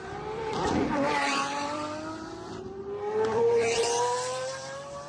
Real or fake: fake